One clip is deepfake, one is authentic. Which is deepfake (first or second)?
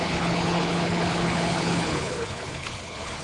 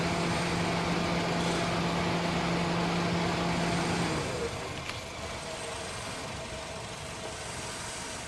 first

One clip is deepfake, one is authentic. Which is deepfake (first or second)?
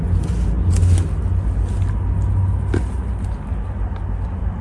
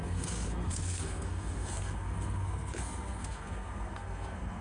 second